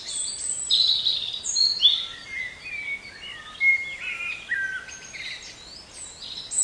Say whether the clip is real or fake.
real